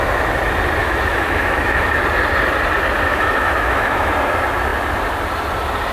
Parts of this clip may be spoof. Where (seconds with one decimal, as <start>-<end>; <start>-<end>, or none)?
0.8-1.9; 3.1-4.1